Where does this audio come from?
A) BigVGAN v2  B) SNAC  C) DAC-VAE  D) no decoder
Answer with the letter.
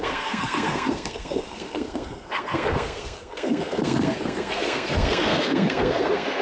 B